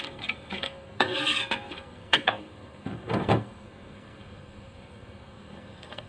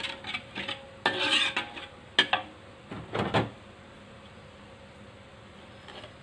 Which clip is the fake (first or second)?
first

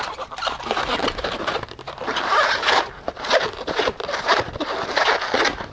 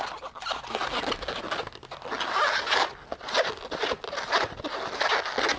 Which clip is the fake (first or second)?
first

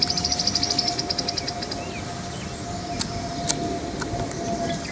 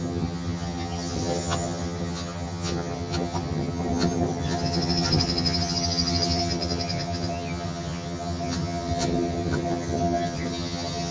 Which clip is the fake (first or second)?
second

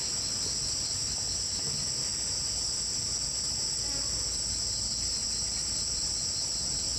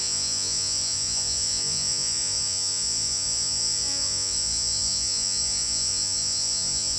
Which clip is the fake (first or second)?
second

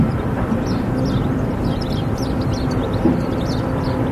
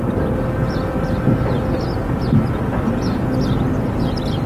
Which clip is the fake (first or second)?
first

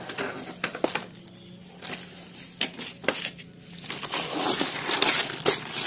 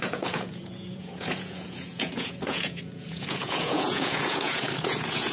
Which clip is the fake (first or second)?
second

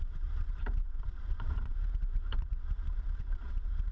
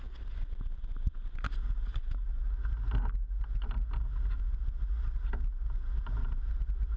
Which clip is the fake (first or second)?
first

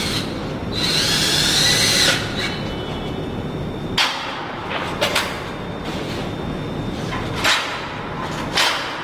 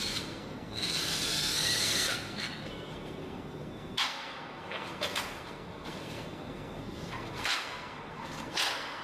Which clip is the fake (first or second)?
second